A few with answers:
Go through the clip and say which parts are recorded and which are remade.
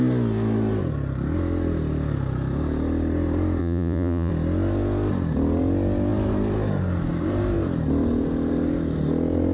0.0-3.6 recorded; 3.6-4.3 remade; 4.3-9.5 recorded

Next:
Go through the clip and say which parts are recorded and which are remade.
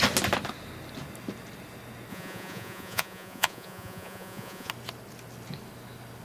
0.0-2.1 recorded; 2.1-4.7 remade; 4.7-6.2 recorded